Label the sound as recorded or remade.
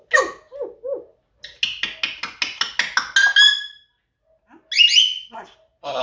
recorded